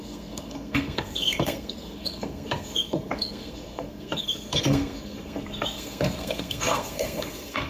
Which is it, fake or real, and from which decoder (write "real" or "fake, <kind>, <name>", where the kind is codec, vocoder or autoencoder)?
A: fake, codec, SNAC